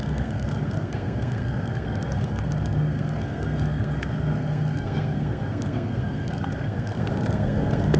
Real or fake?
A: fake